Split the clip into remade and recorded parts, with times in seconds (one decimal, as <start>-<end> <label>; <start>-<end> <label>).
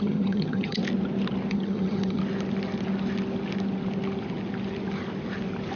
0.0-0.8 remade; 0.8-1.5 recorded; 1.5-2.2 remade; 2.2-5.8 recorded